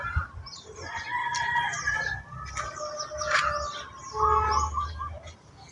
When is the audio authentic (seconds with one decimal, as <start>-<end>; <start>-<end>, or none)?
0.0-5.7